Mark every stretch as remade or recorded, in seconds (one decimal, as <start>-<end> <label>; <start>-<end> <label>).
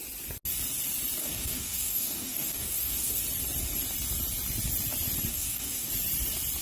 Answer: 0.0-1.2 recorded; 1.2-3.2 remade; 3.2-5.3 recorded; 5.3-5.9 remade; 5.9-6.6 recorded